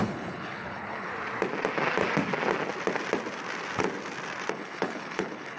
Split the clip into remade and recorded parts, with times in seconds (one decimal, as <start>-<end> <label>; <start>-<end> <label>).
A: 0.0-1.1 remade; 1.1-4.5 recorded; 4.5-5.6 remade